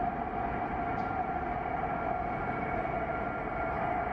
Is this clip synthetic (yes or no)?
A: no